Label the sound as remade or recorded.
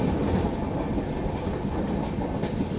recorded